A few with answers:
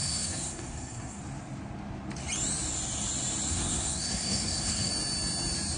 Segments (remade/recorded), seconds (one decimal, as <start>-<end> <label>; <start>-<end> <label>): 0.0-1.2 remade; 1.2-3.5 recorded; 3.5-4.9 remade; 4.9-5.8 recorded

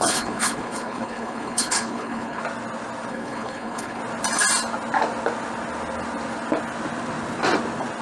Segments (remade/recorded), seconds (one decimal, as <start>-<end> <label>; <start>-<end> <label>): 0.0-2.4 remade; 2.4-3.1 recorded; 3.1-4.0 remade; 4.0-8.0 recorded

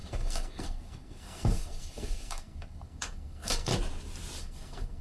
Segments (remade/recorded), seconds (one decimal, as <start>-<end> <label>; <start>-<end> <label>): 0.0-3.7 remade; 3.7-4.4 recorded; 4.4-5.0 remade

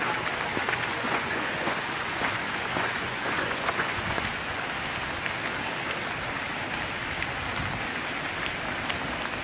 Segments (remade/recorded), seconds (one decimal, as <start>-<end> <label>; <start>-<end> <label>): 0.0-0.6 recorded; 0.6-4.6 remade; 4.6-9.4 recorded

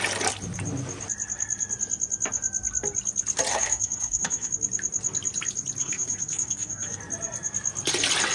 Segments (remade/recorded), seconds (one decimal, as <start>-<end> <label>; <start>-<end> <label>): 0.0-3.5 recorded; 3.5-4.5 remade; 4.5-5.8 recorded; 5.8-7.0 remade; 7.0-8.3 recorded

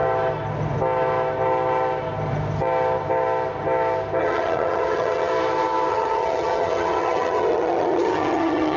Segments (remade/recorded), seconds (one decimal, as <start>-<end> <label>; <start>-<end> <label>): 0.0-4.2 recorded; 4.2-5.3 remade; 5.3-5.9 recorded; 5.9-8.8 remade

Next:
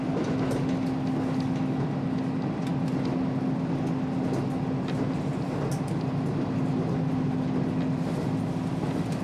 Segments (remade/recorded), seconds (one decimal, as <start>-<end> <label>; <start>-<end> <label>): 0.0-9.2 recorded

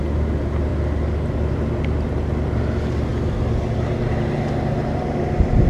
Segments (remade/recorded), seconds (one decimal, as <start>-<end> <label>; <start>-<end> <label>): 0.0-5.7 recorded